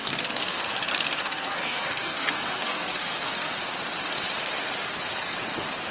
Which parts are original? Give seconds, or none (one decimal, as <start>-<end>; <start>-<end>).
0.6-1.2; 3.5-5.9